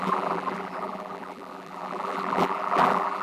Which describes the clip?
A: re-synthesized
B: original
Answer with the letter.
A